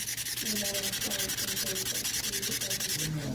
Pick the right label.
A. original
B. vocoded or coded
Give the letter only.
A